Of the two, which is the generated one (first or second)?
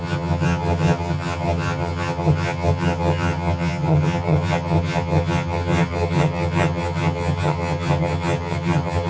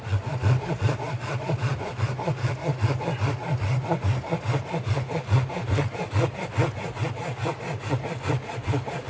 first